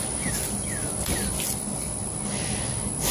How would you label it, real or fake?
real